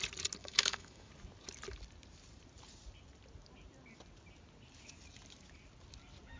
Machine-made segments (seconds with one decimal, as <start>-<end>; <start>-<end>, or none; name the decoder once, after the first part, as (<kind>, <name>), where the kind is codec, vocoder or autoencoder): 0.4-1.1 (autoencoder, DAC-VAE)